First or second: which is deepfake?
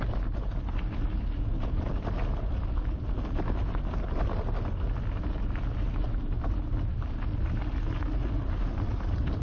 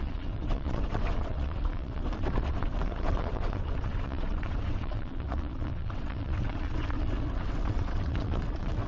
second